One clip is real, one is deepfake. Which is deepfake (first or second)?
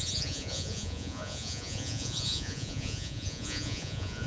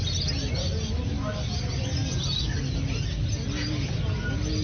first